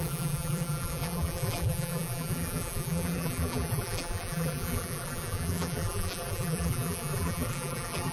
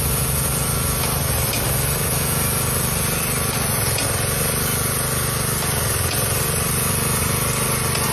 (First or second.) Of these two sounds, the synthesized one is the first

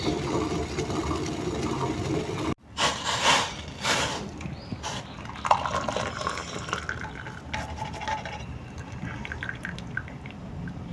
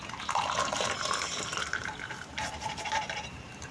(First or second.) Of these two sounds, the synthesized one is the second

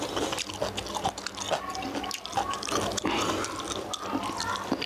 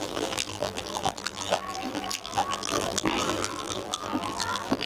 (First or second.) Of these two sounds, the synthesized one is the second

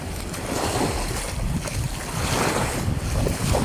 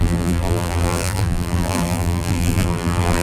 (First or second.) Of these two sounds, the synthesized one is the second